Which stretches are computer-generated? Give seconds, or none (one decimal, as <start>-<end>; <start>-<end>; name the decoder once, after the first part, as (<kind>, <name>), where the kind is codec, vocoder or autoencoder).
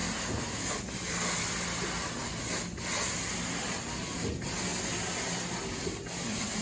none